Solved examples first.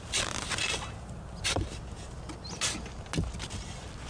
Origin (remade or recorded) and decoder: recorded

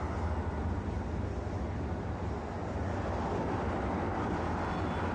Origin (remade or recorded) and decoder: recorded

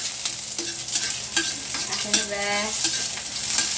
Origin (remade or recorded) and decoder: recorded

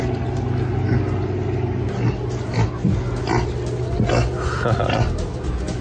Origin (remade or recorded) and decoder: recorded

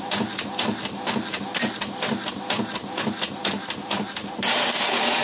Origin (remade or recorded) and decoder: recorded